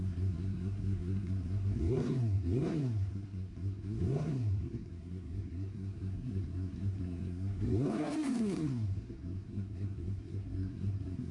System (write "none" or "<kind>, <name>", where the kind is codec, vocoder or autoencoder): codec, SNAC